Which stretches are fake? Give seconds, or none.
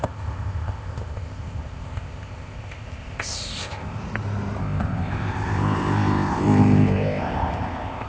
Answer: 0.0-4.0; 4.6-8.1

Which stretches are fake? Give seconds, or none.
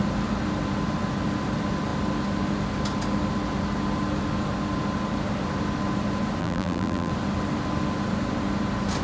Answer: 6.4-7.1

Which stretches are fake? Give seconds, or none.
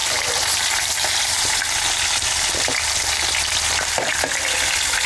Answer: 0.0-1.6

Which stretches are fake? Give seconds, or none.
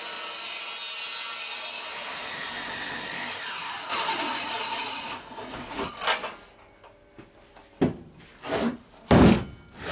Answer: 2.0-2.5; 3.9-5.9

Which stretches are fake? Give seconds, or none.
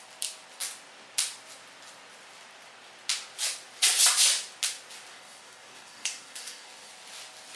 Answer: 5.1-6.9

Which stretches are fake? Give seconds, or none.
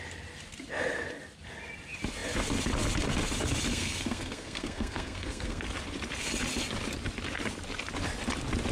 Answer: 3.7-5.6